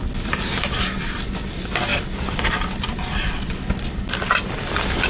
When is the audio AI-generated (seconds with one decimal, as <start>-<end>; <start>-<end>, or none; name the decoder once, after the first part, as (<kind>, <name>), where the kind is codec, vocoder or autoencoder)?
none